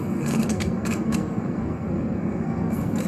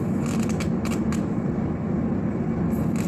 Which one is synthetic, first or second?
first